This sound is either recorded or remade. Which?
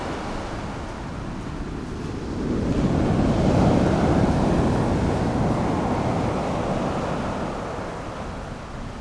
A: recorded